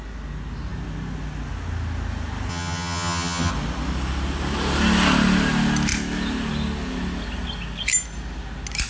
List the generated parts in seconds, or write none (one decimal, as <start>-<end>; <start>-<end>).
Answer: 2.5-3.5